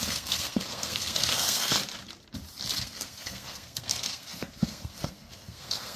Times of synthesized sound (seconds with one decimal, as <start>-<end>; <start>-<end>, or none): 0.0-1.8; 2.8-6.0